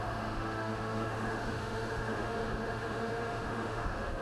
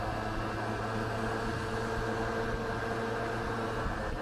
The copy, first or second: first